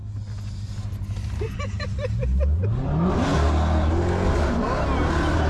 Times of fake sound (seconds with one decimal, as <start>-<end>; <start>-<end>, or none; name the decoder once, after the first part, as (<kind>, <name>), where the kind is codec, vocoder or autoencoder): none